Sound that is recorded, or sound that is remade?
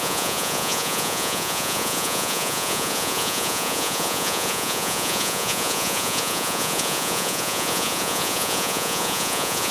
remade